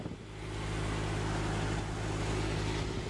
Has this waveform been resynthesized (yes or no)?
no